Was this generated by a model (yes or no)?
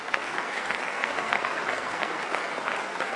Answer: yes